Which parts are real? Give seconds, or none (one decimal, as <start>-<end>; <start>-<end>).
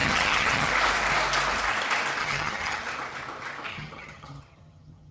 0.7-2.2; 2.8-3.7